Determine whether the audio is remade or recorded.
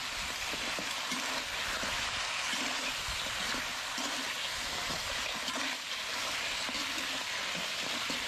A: recorded